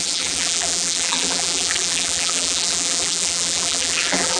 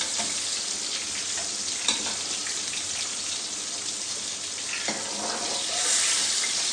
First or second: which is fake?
first